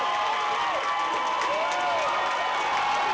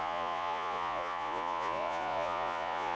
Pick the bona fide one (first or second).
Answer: first